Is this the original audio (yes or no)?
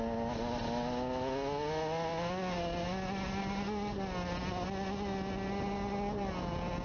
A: yes